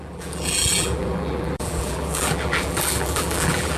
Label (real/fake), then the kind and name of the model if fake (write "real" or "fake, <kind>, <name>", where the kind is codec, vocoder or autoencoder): fake, vocoder, BigVGAN v2